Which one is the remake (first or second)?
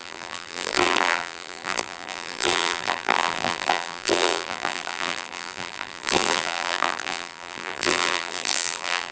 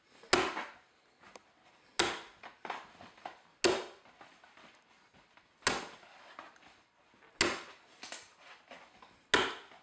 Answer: first